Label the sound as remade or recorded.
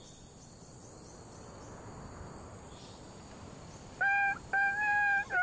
recorded